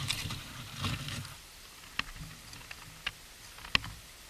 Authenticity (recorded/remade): recorded